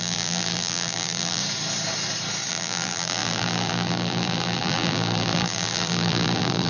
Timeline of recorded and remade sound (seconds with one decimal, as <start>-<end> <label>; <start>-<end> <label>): 0.0-1.4 remade; 1.4-2.5 recorded; 2.5-6.7 remade